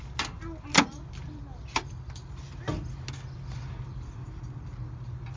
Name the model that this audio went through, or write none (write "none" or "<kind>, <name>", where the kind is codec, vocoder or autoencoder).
none